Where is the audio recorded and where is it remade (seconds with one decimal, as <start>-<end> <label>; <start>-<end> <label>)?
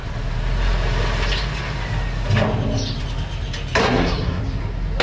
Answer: 0.0-3.8 recorded; 3.8-4.4 remade; 4.4-5.0 recorded